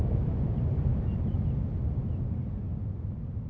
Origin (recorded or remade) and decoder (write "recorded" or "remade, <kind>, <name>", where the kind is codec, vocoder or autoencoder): recorded